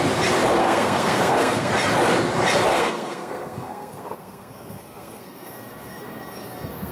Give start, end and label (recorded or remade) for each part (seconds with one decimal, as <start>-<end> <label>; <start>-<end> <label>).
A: 0.0-0.6 recorded; 0.6-1.7 remade; 1.7-2.7 recorded; 2.7-6.9 remade